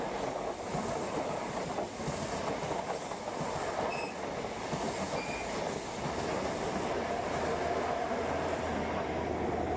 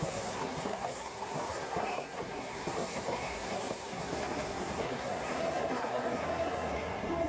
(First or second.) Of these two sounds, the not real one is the second